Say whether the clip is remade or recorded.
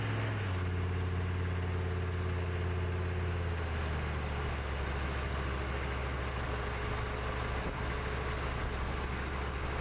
recorded